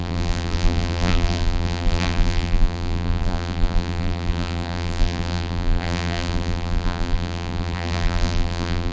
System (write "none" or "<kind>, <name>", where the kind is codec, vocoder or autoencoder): vocoder, BigVGAN v2